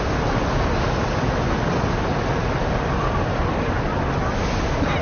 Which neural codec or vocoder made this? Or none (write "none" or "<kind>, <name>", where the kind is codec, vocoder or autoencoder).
none